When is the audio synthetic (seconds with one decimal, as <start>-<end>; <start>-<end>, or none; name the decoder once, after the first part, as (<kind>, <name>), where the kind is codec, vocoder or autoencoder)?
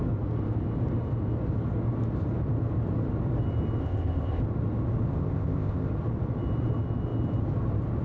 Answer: 3.8-4.4 (codec, ZipCodec); 5.1-5.9